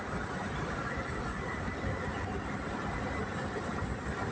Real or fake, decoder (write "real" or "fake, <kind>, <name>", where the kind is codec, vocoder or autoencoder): real